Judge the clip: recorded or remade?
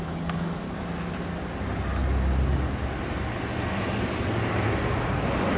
recorded